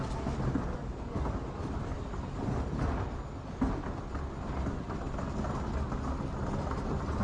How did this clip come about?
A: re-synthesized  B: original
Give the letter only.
B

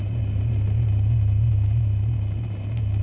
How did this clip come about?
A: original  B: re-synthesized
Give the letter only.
A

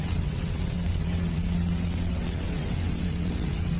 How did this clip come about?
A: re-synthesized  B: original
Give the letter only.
A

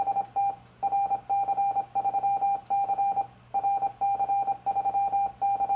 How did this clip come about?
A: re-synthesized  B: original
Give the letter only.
B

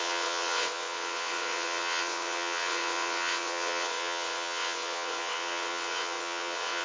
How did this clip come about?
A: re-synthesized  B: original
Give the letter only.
A